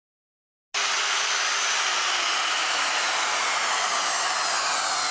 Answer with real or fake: real